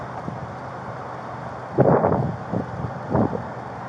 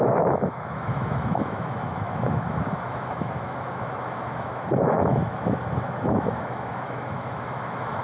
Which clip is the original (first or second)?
first